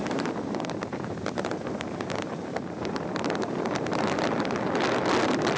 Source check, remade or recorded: remade